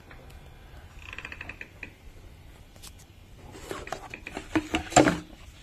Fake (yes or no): no